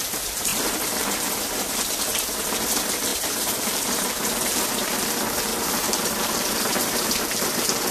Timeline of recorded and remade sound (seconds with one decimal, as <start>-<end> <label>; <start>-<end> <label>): 0.0-3.1 recorded; 3.1-4.3 remade; 4.3-5.5 recorded; 5.5-7.2 remade; 7.2-7.9 recorded